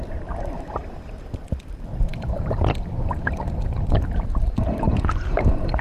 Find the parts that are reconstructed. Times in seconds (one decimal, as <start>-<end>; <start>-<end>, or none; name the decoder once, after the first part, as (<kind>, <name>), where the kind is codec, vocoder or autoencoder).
2.1-5.8 (vocoder, BigVGAN v2)